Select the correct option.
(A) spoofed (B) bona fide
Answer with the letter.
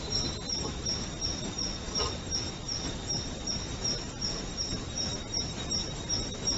A